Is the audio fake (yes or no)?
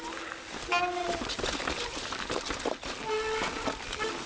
no